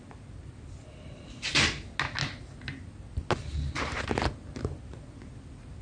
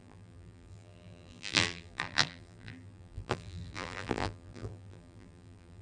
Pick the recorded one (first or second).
first